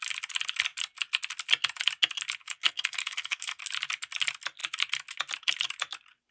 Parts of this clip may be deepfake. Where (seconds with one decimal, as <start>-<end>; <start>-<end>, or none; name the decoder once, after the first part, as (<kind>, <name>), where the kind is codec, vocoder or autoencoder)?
2.4-3.6 (codec, SNAC)